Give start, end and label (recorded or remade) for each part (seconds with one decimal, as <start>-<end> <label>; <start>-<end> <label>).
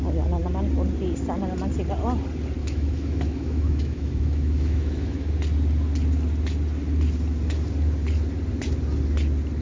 0.0-2.6 recorded; 2.6-5.3 remade; 5.3-9.6 recorded